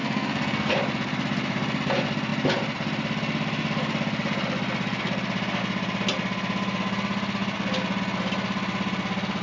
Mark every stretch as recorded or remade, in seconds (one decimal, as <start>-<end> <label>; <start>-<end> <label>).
0.0-0.7 remade; 0.7-9.4 recorded